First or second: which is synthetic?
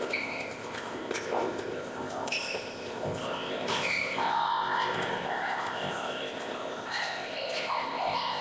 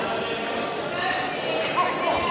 first